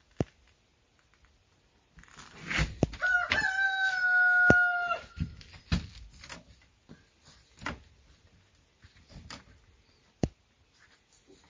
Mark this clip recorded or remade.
recorded